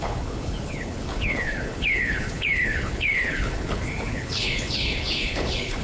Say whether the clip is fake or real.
fake